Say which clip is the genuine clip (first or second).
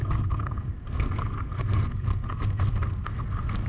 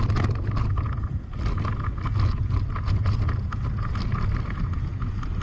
second